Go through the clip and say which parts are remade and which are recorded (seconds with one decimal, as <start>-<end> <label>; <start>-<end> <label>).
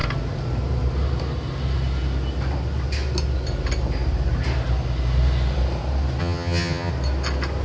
0.0-6.2 recorded; 6.2-6.9 remade; 6.9-7.6 recorded